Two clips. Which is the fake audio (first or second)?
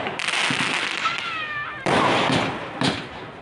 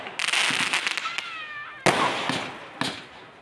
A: first